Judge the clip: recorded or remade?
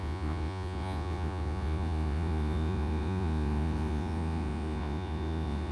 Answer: remade